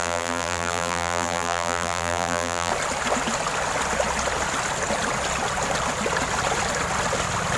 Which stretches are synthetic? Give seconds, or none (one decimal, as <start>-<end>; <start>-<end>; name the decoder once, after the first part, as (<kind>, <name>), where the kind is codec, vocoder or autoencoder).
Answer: 0.0-2.7 (vocoder, BigVGAN v2)